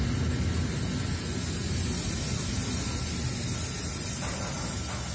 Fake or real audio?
real